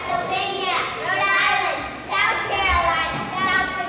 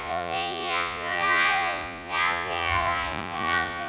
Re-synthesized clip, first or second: second